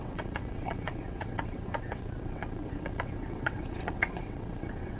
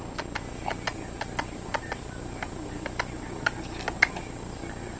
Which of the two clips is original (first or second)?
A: second